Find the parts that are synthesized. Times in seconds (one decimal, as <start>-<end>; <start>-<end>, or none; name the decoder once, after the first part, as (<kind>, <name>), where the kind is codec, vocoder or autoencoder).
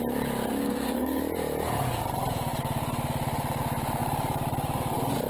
0.6-1.2 (codec, SNAC)